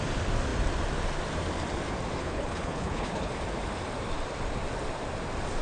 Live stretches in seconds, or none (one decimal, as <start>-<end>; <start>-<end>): 0.0-2.2; 3.3-5.6